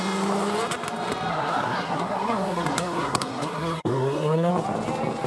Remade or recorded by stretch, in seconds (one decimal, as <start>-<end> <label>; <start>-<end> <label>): 0.0-1.3 recorded; 1.3-4.5 remade; 4.5-5.3 recorded

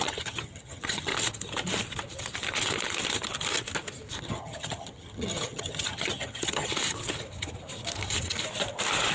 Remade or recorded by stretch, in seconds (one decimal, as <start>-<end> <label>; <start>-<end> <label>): 0.0-1.1 remade; 1.1-4.2 recorded; 4.2-6.7 remade; 6.7-9.1 recorded

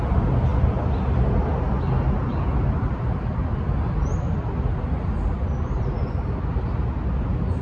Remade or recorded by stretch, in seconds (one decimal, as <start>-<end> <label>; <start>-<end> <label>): 0.0-2.3 recorded; 2.3-5.9 remade; 5.9-7.6 recorded

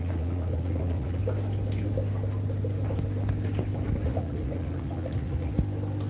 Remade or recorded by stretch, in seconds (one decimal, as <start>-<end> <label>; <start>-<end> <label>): 0.0-1.2 remade; 1.2-4.0 recorded; 4.0-5.5 remade; 5.5-6.1 recorded

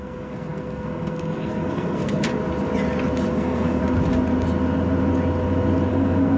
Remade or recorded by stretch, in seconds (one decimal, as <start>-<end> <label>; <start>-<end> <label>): 0.0-2.3 remade; 2.3-3.3 recorded; 3.3-3.8 remade; 3.8-5.9 recorded; 5.9-6.4 remade

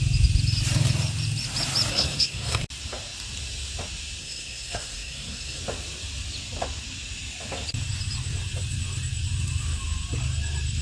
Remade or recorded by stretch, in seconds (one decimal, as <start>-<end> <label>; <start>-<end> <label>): 0.0-1.9 recorded; 1.9-2.6 remade; 2.6-4.2 recorded; 4.2-5.6 remade; 5.6-10.8 recorded

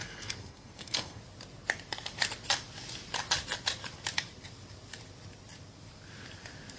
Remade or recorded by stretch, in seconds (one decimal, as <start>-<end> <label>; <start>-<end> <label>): 0.0-1.2 remade; 1.2-6.8 recorded

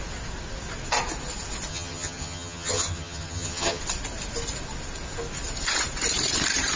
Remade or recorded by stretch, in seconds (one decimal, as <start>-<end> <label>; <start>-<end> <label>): 0.0-1.7 recorded; 1.7-3.8 remade; 3.8-6.8 recorded